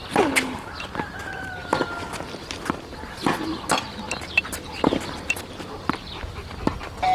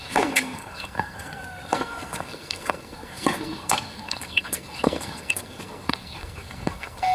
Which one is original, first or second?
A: first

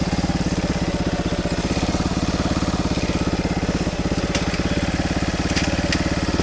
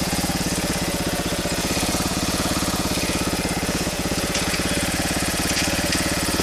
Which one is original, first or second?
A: first